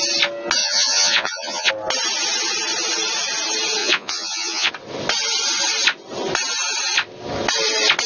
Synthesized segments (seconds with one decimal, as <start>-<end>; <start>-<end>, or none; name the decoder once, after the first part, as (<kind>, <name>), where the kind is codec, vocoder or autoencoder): 0.6-1.7 (vocoder, Vocos); 3.8-4.7